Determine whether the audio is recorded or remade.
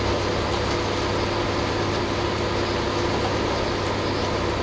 recorded